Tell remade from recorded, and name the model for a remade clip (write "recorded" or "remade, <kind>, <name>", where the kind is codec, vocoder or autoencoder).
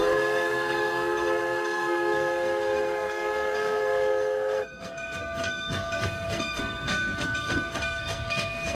remade, codec, SNAC